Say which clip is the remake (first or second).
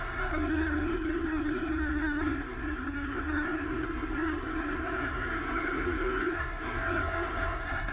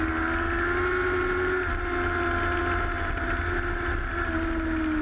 first